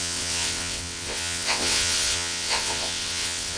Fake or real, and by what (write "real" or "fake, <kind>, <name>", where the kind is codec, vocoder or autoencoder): fake, vocoder, WaveNeXt